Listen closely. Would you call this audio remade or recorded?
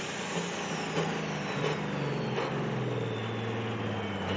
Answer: recorded